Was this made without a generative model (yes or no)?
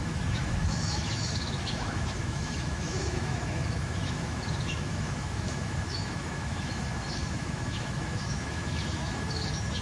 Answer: no